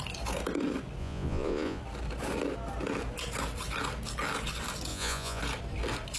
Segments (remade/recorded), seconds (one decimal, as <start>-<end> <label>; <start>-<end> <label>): 0.0-1.0 recorded; 1.0-1.8 remade; 1.8-4.9 recorded; 4.9-5.4 remade; 5.4-6.2 recorded

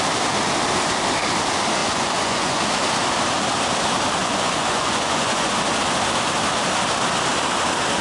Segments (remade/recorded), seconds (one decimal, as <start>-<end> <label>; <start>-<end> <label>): 0.0-1.8 recorded; 1.8-2.6 remade; 2.6-4.2 recorded; 4.2-5.5 remade; 5.5-8.0 recorded

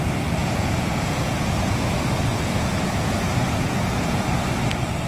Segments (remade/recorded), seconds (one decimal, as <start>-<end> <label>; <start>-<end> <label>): 0.0-0.4 recorded; 0.4-1.9 remade; 1.9-2.3 recorded; 2.3-4.2 remade; 4.2-5.1 recorded